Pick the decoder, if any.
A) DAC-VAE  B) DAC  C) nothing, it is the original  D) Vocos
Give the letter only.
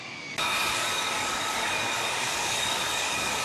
B